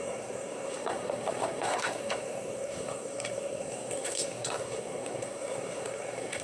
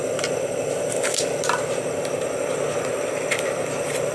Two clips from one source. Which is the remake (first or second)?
first